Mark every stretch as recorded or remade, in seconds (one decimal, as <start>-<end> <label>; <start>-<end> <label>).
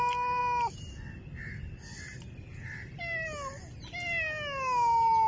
0.0-5.3 recorded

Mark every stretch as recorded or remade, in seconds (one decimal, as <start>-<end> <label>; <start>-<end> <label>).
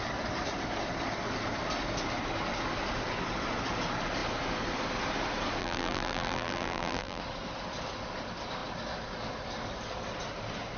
0.0-5.6 recorded; 5.6-7.2 remade; 7.2-10.8 recorded